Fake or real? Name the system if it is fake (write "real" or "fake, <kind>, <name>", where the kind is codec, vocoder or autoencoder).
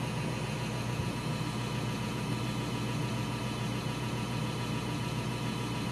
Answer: real